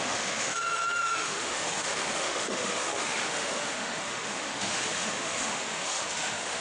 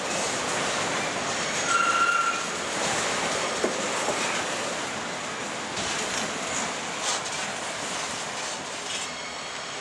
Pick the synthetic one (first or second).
first